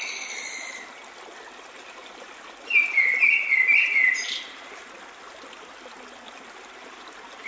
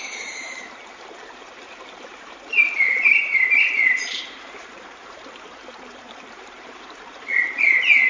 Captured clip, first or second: first